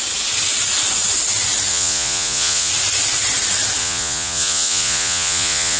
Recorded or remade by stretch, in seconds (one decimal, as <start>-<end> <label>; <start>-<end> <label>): 0.0-1.7 recorded; 1.7-2.7 remade; 2.7-3.8 recorded; 3.8-5.8 remade